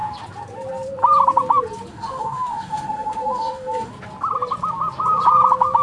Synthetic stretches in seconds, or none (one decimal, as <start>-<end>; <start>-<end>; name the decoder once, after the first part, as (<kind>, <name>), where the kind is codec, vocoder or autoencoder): 1.9-3.9 (autoencoder, DAC-VAE)